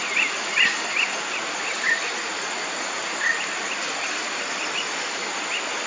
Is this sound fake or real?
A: real